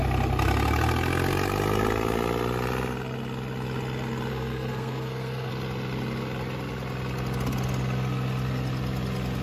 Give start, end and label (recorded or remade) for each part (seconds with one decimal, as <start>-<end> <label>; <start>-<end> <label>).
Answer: 0.0-4.3 recorded; 4.3-5.5 remade; 5.5-9.4 recorded